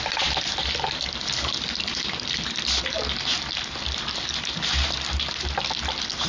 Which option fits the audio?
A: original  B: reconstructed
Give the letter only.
A